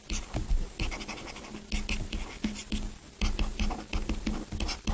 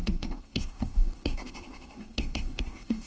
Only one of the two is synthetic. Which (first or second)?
second